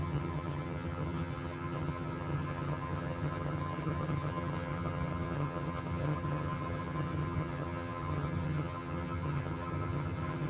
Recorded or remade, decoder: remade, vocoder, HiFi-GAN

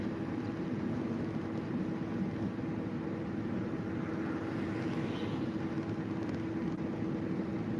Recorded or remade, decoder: recorded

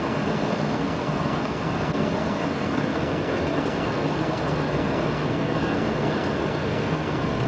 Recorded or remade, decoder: remade, codec, SNAC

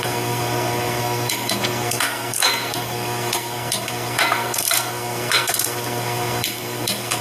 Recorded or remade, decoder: remade, codec, SNAC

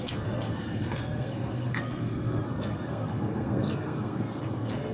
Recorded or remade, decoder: remade, codec, SNAC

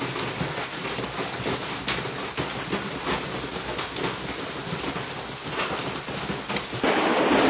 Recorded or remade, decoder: recorded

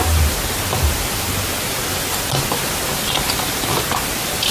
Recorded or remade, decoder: recorded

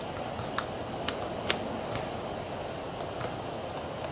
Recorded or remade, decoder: recorded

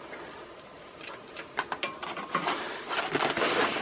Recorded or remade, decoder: recorded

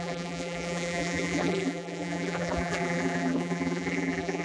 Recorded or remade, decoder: remade, vocoder, BigVGAN v2